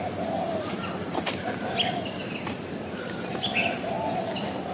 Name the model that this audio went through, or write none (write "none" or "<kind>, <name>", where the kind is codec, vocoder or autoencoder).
none